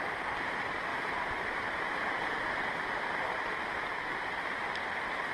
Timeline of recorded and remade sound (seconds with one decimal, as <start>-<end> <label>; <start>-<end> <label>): 0.0-0.9 recorded; 0.9-1.9 remade; 1.9-5.3 recorded

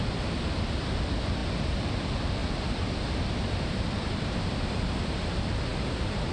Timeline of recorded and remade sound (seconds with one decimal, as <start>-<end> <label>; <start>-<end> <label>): 0.0-2.4 recorded; 2.4-5.1 remade; 5.1-6.3 recorded